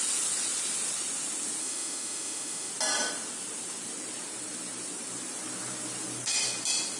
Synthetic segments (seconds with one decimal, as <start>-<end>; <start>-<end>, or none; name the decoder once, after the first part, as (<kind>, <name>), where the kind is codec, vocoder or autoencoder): 1.6-2.7 (autoencoder, DAC-VAE)